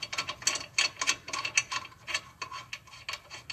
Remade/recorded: recorded